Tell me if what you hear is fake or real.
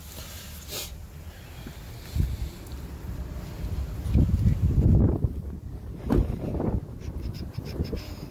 real